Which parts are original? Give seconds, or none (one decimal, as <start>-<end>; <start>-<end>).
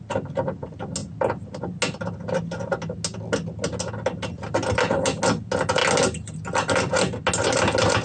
0.0-8.0